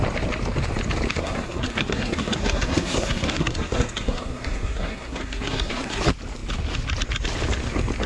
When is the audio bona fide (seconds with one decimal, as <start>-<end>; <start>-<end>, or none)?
0.0-1.1; 6.0-8.1

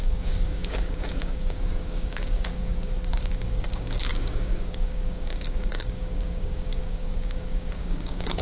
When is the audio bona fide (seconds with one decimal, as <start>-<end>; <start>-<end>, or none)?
none

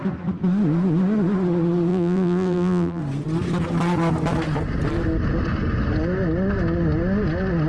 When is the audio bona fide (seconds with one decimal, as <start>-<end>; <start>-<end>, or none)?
0.0-1.9; 3.0-7.7

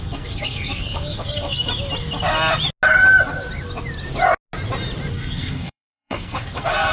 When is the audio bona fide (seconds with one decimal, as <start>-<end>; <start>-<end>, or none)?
1.7-5.1

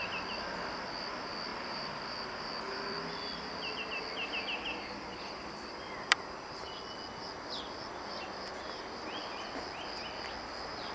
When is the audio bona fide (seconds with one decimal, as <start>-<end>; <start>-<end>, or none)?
0.0-1.5; 6.7-10.9

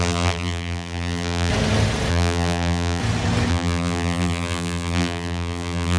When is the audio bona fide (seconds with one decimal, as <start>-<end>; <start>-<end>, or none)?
1.5-2.1; 3.0-3.5